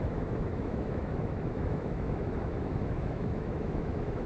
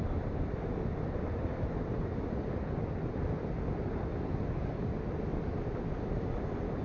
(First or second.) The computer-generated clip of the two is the first